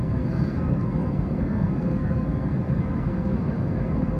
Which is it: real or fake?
fake